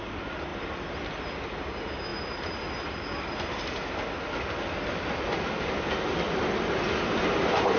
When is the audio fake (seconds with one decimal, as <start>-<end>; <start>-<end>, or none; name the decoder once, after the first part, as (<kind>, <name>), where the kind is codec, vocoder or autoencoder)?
none

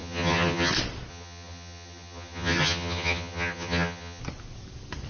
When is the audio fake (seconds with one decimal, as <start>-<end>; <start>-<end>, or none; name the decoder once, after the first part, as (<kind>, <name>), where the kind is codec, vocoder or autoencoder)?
0.0-0.7 (vocoder, HiFi-GAN); 1.1-4.2

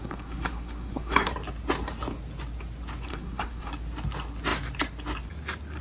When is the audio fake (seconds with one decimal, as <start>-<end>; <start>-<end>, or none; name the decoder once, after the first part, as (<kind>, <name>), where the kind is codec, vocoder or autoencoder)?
0.0-1.3 (codec, SNAC); 3.1-3.7

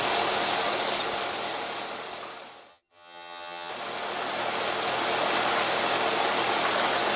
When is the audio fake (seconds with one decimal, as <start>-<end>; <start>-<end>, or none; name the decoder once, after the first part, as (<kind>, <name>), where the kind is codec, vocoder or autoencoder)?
2.7-3.7 (vocoder, HiFi-GAN)

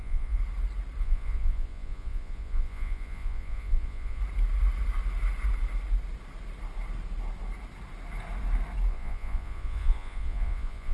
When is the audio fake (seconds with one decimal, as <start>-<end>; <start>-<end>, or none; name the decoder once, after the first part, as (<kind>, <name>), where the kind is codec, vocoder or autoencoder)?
0.0-0.4 (vocoder, Vocos); 1.0-4.2; 8.9-10.9